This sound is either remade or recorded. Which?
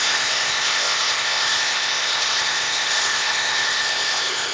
remade